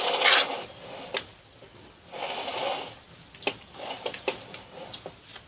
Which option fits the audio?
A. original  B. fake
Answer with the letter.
A